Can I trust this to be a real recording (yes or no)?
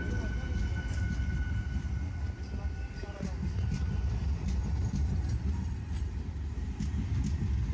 yes